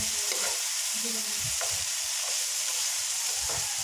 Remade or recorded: remade